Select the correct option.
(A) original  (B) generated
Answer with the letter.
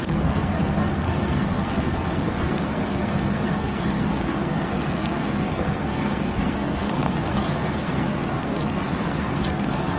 B